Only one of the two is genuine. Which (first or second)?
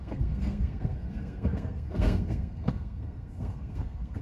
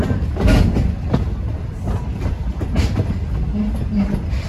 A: second